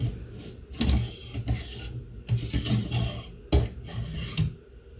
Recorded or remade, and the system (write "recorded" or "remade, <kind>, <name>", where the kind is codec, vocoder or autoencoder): recorded